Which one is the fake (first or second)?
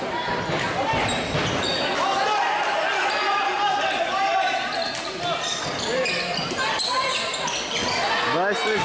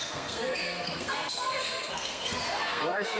second